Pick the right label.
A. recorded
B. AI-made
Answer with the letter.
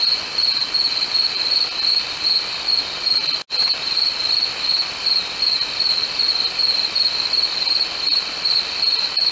A